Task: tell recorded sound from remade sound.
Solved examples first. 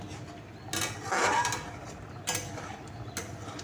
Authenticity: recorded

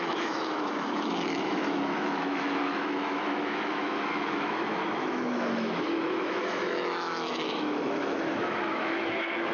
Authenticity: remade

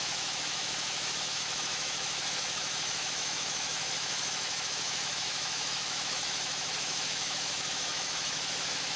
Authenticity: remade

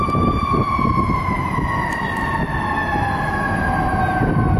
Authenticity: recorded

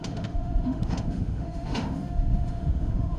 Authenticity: remade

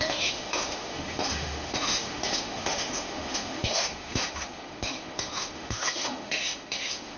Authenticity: remade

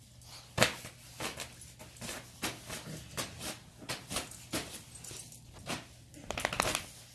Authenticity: recorded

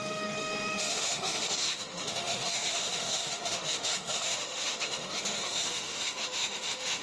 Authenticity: remade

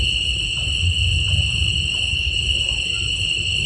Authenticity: recorded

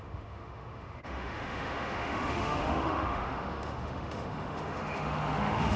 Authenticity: remade